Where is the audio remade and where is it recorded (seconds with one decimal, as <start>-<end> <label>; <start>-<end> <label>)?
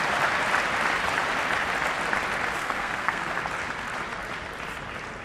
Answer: 0.0-2.6 recorded; 2.6-3.3 remade; 3.3-5.2 recorded